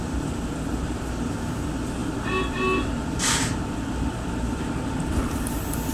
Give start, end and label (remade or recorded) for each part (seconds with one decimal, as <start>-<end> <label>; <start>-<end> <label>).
0.0-5.9 recorded